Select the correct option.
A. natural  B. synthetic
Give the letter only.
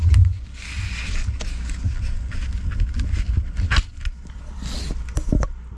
A